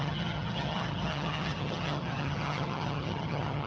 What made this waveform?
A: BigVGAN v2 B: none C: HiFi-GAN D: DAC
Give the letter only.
C